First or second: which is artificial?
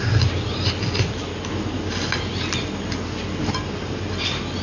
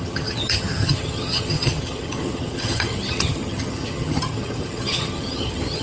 second